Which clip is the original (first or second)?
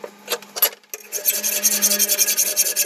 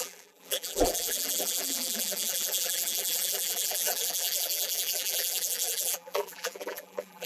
first